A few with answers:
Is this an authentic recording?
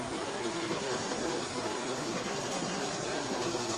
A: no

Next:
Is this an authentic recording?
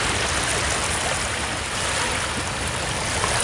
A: yes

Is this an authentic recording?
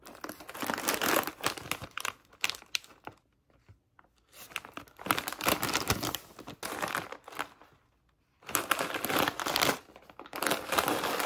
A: yes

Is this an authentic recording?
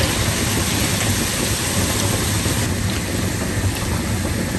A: yes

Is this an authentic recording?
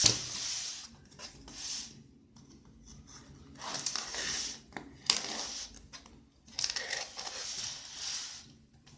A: yes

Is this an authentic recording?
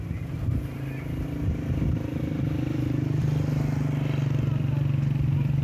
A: yes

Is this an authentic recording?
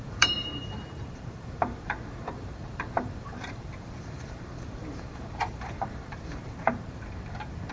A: no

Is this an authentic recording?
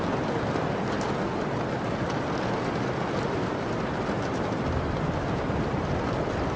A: yes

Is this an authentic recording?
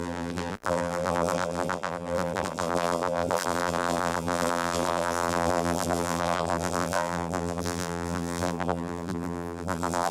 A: no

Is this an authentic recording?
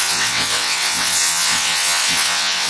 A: no